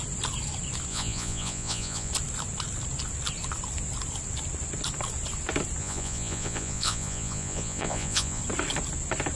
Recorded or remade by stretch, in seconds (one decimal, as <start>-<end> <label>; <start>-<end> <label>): 0.0-0.9 recorded; 0.9-2.1 remade; 2.1-5.8 recorded; 5.8-8.4 remade; 8.4-9.4 recorded